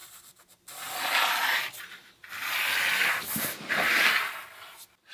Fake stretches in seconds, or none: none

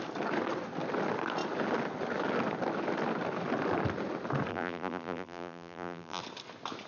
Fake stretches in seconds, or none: 4.5-6.2

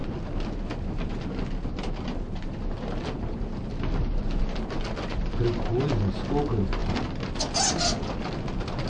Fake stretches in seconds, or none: none

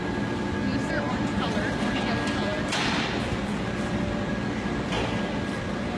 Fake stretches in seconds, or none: 0.7-1.8

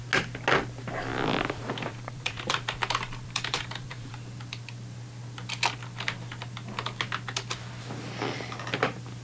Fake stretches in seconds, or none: 1.1-4.1

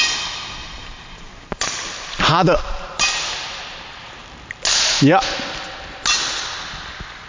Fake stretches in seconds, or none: 0.6-3.4

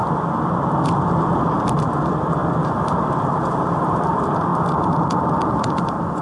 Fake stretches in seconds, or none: 1.0-4.5; 5.2-6.2